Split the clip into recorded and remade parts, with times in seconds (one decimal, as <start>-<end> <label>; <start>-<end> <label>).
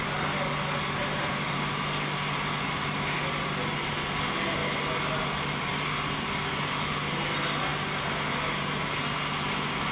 0.0-1.0 recorded; 1.0-1.7 remade; 1.7-9.9 recorded